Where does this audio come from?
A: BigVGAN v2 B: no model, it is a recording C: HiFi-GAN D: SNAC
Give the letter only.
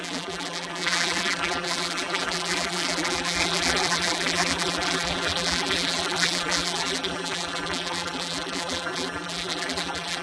A